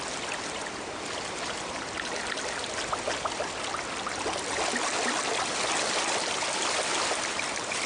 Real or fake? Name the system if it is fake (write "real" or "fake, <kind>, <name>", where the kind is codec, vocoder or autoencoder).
real